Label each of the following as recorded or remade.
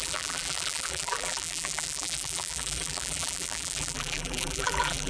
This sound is remade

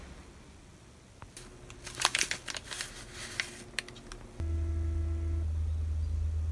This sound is recorded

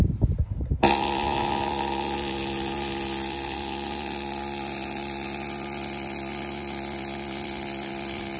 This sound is recorded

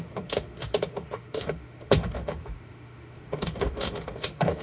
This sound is remade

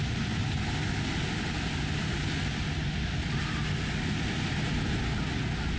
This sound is recorded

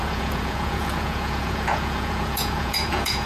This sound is remade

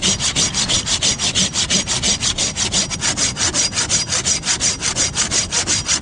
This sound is recorded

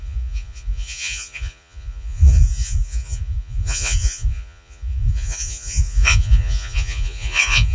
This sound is remade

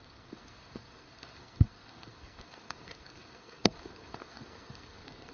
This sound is remade